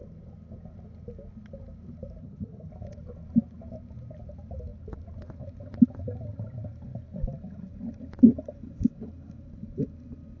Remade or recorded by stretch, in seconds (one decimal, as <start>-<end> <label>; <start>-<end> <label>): 0.0-2.2 recorded; 2.2-2.7 remade; 2.7-10.4 recorded